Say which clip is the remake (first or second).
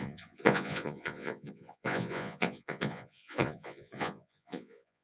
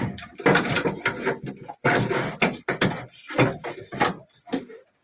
first